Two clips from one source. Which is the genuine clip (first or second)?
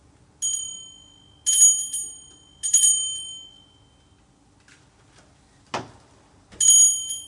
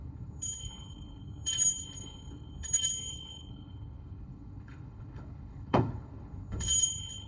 first